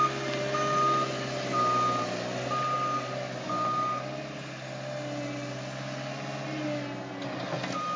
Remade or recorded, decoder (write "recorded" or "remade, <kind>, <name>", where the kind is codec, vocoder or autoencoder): recorded